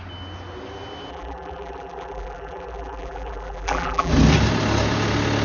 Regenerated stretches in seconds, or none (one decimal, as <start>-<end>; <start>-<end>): 1.1-4.1